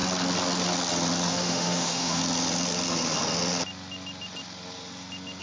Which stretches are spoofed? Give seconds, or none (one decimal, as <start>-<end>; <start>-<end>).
1.3-2.2